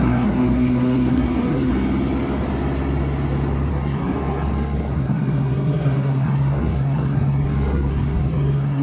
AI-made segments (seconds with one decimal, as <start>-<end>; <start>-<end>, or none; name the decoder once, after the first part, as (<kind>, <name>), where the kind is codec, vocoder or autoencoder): 0.0-1.7 (codec, SNAC); 3.7-8.8